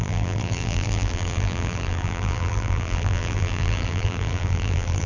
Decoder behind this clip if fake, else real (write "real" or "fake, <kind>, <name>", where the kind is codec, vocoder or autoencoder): fake, vocoder, BigVGAN v2